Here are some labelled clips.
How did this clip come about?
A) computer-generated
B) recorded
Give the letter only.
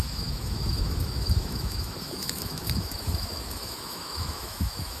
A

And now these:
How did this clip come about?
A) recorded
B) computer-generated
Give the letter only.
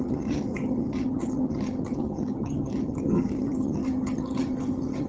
B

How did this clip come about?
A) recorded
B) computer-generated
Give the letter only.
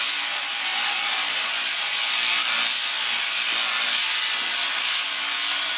A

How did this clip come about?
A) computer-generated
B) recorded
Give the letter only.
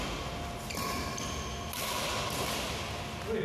B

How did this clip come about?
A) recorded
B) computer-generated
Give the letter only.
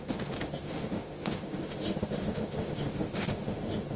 B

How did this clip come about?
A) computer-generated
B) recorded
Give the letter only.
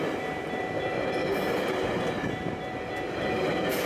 B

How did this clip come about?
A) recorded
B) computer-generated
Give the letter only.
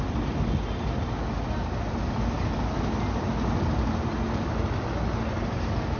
A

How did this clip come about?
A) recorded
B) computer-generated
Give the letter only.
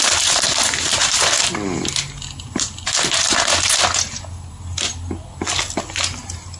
A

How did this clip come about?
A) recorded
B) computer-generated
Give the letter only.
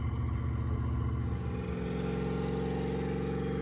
A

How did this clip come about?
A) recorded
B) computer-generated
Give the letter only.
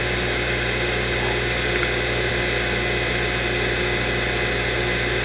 A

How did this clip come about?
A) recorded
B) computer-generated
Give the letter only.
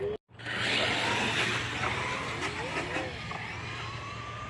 A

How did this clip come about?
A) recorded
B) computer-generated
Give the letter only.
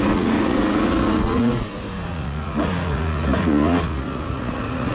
B